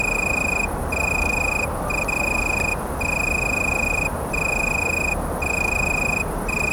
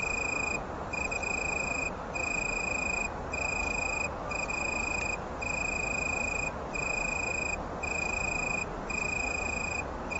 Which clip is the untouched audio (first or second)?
second